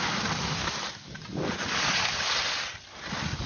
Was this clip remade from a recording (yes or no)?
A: no